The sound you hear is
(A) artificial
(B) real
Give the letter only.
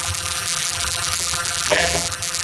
A